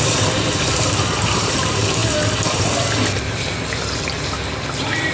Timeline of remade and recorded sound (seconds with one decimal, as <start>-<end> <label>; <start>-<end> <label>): 0.0-2.0 remade; 2.0-5.1 recorded